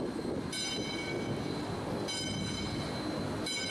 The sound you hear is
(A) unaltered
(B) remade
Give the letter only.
A